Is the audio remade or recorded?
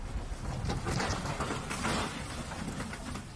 recorded